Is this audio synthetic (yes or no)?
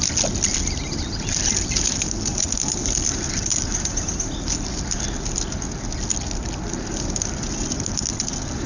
no